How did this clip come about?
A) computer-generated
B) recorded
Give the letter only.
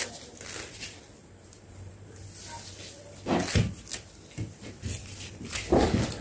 B